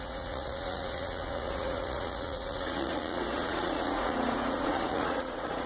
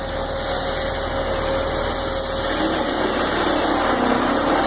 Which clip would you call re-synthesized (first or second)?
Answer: first